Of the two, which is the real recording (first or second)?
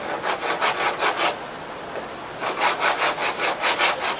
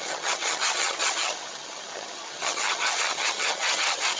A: first